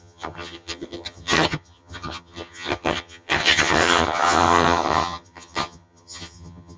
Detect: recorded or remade remade